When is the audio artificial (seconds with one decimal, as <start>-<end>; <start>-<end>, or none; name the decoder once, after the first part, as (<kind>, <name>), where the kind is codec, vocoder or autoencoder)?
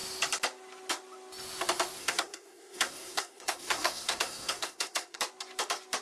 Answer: 2.0-5.2 (codec, SNAC)